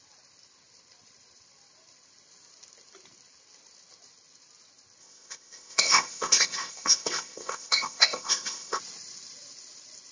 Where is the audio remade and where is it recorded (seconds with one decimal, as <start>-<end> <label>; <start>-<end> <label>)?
0.0-5.0 recorded; 5.0-8.8 remade; 8.8-10.1 recorded